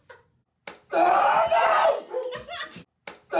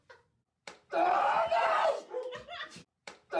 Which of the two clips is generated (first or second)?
second